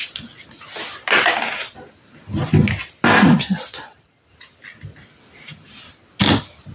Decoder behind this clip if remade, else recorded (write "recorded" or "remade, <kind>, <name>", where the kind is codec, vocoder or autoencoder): recorded